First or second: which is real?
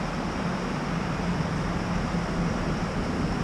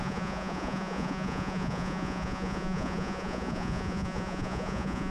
first